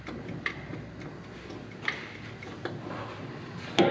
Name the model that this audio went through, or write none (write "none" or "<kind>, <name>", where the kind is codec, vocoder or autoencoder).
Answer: none